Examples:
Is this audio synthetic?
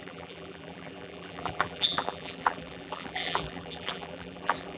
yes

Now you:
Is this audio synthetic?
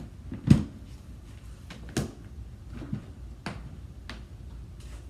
no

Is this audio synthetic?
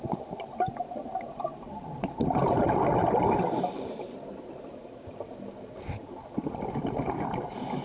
yes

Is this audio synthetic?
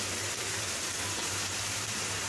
yes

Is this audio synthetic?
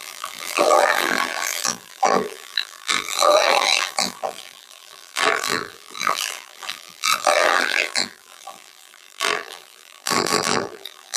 yes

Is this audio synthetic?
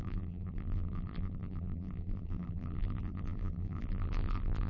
yes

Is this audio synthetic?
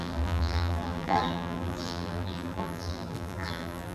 yes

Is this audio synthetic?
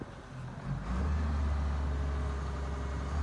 no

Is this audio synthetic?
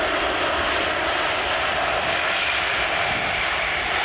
yes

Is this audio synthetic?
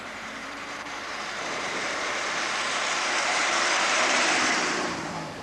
yes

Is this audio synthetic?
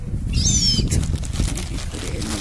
no